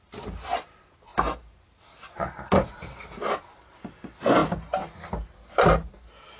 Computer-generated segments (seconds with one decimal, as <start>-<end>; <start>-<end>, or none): none